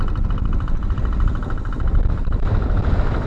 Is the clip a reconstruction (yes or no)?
no